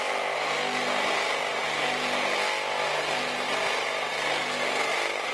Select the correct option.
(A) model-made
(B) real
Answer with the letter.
B